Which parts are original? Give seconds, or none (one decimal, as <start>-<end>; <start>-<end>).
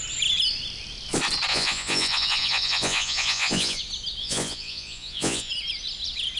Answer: 0.0-1.5; 3.8-4.2; 5.5-6.4